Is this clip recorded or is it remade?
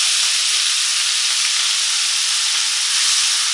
recorded